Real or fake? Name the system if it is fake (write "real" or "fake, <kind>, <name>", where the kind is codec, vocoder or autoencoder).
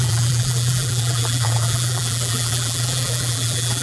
fake, vocoder, BigVGAN v2